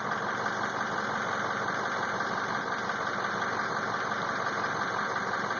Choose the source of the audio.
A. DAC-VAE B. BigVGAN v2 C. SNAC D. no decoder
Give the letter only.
D